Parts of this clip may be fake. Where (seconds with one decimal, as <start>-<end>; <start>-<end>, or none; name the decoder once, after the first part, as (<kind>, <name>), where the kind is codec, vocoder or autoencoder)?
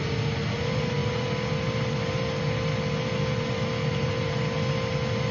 none